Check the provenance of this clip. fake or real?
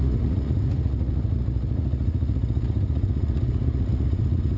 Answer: fake